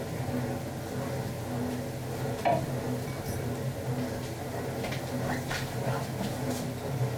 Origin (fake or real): real